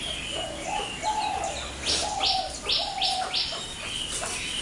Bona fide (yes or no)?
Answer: yes